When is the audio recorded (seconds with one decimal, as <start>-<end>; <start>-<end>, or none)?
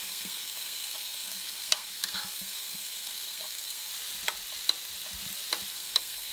3.9-5.7